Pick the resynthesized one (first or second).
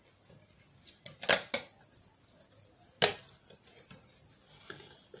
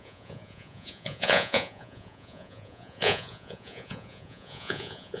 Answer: second